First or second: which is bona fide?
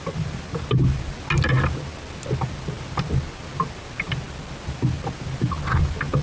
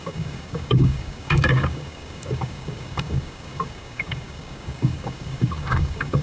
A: first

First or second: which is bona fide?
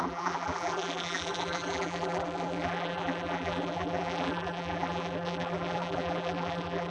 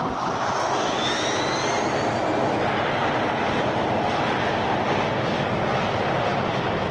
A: second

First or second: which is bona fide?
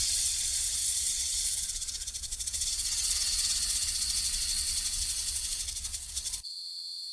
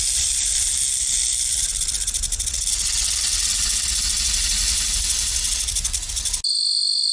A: second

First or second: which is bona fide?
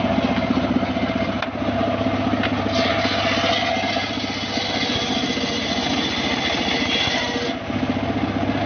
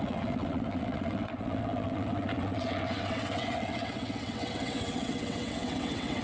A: first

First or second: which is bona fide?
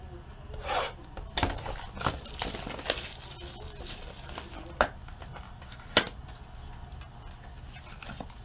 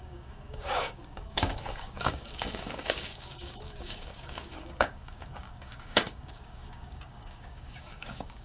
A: first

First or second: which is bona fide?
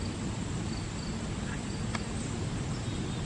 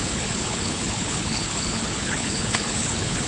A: first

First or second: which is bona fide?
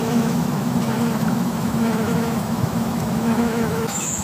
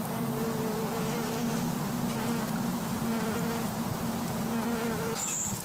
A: second